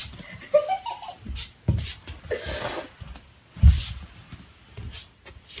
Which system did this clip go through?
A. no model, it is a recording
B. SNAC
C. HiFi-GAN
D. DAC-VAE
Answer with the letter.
A